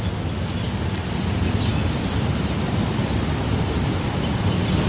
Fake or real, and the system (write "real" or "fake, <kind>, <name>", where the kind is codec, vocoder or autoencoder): real